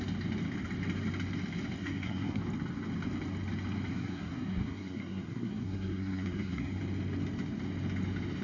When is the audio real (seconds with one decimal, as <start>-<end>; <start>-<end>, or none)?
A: 0.0-1.8; 2.4-3.9; 6.8-8.4